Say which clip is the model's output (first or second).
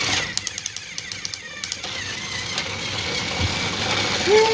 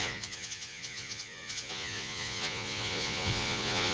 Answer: second